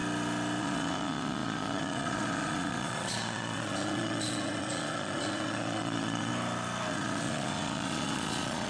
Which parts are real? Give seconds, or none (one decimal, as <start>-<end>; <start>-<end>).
0.0-0.6; 6.3-6.9